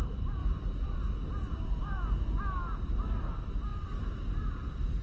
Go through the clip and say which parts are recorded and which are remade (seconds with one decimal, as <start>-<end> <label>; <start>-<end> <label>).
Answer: 0.0-5.0 recorded